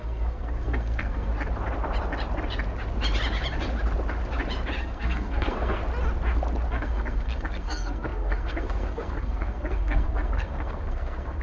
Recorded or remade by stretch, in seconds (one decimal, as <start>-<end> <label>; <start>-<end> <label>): 0.0-1.3 remade; 1.3-4.8 recorded; 4.8-5.8 remade; 5.8-6.7 recorded; 6.7-11.4 remade